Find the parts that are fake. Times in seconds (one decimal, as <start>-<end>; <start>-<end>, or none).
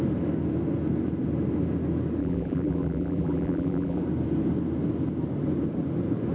2.2-4.0